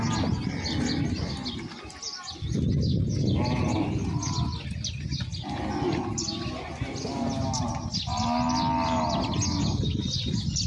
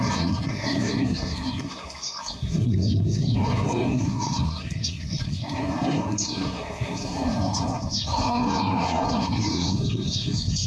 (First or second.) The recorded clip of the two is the first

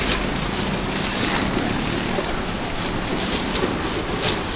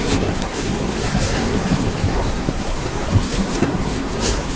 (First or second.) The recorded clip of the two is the first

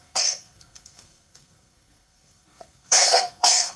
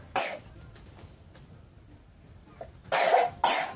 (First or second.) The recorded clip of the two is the second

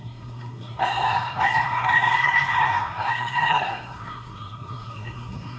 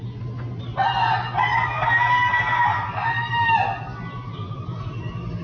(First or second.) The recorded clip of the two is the second